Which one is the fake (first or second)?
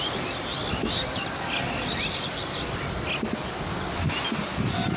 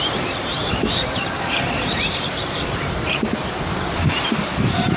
second